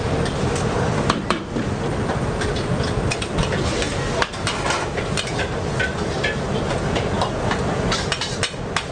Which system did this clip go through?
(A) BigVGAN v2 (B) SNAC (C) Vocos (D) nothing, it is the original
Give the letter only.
D